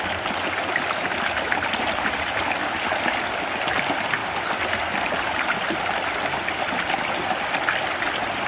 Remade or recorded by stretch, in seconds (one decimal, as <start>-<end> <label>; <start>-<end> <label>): 0.0-8.5 recorded